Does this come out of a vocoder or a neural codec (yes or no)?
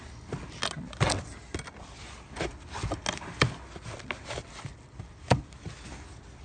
no